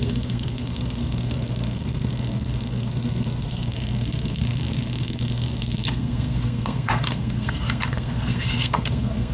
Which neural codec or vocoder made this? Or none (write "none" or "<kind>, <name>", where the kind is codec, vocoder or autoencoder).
codec, SNAC